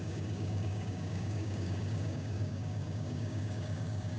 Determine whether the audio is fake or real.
fake